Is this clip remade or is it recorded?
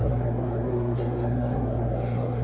remade